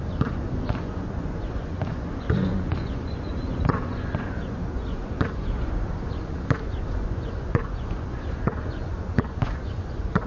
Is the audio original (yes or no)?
no